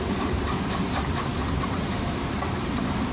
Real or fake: fake